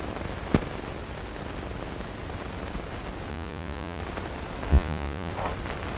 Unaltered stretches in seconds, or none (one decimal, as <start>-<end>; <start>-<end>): 0.0-3.3; 4.0-4.7; 5.3-6.0